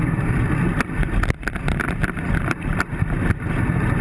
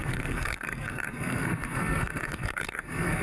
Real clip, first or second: first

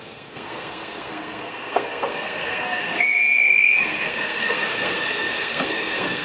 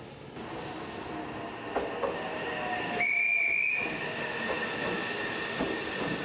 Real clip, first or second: second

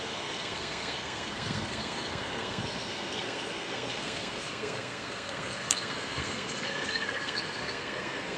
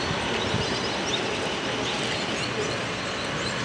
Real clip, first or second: second